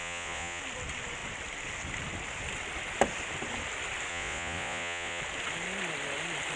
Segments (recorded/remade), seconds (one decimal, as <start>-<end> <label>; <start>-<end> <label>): 0.0-0.6 remade; 0.6-4.1 recorded; 4.1-5.2 remade; 5.2-6.6 recorded

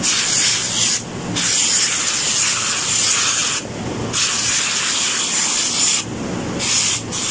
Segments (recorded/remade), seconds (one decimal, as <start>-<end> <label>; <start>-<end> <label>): 0.0-7.3 recorded

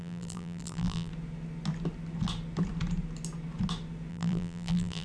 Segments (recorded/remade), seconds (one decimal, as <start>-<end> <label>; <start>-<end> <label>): 0.0-1.1 remade; 1.1-4.1 recorded; 4.1-5.0 remade

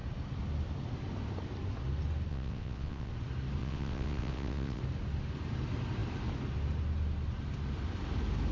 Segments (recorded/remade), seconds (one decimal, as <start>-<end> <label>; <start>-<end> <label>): 0.0-2.3 recorded; 2.3-3.1 remade; 3.1-3.6 recorded; 3.6-4.8 remade; 4.8-8.5 recorded